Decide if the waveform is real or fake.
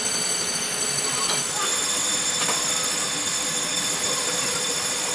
real